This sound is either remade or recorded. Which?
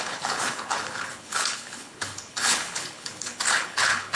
remade